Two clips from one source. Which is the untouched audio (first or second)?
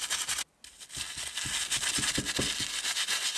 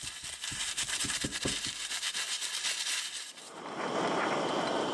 first